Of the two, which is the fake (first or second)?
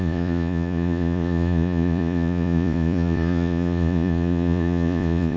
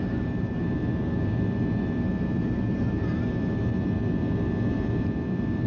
first